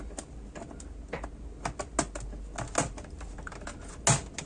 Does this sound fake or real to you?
real